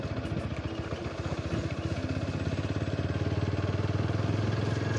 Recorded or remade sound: recorded